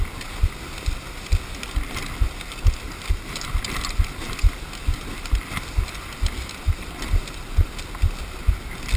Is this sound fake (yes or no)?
no